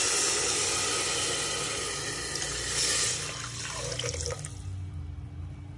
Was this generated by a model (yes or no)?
no